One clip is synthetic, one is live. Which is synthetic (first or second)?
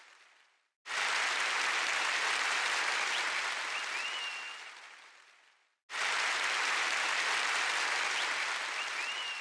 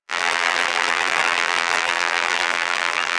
second